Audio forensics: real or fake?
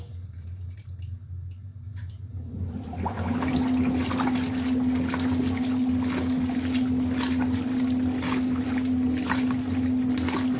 real